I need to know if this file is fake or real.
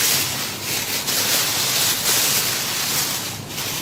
real